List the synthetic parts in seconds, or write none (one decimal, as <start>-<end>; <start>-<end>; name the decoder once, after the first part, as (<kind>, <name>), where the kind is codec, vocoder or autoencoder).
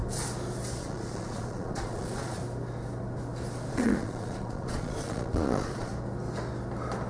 0.8-2.4 (vocoder, Vocos); 3.7-5.9